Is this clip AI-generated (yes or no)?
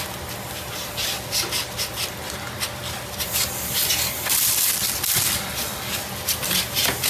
yes